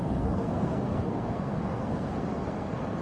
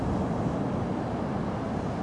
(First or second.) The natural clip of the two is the second